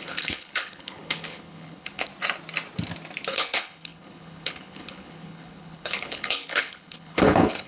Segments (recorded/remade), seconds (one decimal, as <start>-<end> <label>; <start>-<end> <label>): 0.0-2.1 remade; 2.1-3.3 recorded; 3.3-7.7 remade